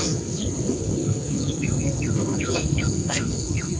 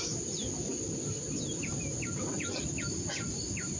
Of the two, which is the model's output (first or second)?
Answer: first